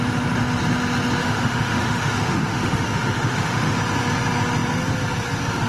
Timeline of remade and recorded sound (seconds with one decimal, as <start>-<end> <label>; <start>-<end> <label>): 0.0-1.2 recorded; 1.2-3.8 remade; 3.8-5.7 recorded